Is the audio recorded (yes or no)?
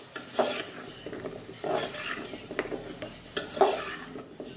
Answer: yes